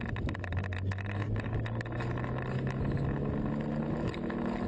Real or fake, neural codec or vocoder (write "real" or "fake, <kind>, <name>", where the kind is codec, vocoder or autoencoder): real